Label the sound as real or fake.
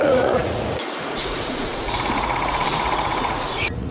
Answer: fake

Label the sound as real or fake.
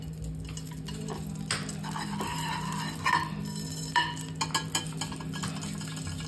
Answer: real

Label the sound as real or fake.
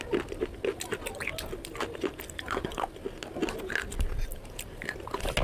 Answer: real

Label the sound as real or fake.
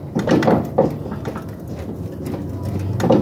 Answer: real